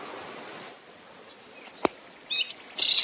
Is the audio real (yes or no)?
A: yes